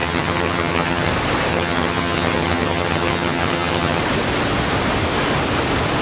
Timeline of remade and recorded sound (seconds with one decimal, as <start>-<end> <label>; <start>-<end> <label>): 0.0-1.1 remade; 1.1-1.5 recorded; 1.5-4.0 remade; 4.0-6.0 recorded